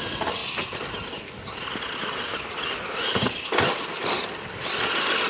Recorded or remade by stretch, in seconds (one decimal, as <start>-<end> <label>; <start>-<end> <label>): 0.0-5.3 recorded